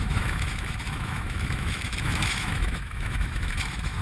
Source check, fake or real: fake